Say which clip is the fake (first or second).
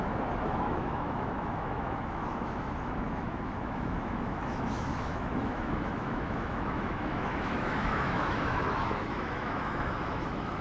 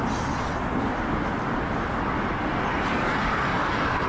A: first